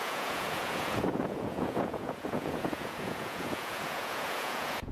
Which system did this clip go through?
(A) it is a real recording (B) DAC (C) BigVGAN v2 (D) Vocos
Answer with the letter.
D